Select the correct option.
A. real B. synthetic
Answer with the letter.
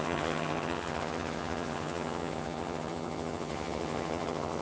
B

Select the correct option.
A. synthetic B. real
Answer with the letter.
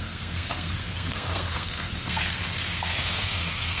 A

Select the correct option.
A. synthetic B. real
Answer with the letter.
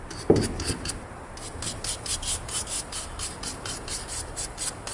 B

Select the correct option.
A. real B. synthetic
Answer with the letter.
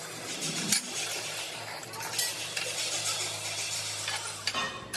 A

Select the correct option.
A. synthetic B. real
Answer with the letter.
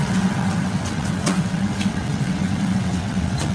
A